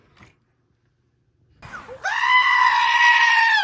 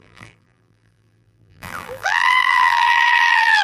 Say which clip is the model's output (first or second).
second